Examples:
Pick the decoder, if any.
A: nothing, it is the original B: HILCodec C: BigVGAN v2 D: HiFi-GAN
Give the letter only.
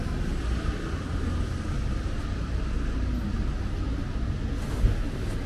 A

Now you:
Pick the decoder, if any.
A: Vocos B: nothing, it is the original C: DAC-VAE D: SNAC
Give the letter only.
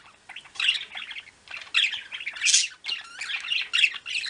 B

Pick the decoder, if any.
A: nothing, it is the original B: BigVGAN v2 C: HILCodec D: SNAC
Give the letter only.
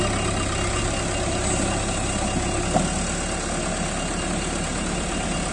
A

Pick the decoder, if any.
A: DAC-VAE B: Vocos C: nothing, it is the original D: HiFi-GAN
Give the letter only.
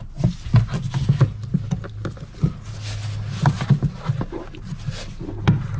C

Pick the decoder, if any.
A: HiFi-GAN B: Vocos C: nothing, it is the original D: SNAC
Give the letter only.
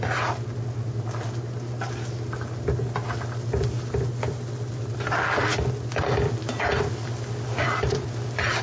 C